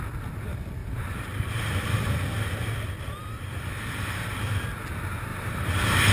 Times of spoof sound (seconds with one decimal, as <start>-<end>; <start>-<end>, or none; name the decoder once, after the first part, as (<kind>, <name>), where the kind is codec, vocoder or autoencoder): 0.8-1.9 (vocoder, BigVGAN v2); 5.3-6.1